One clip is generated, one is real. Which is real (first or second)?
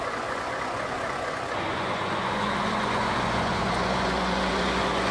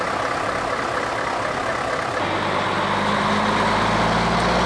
second